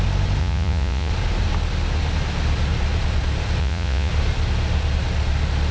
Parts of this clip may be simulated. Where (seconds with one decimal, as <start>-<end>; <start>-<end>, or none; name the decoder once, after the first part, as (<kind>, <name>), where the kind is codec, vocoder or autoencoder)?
0.4-1.1 (vocoder, Vocos); 3.6-4.1